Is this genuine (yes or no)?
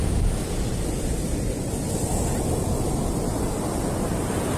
yes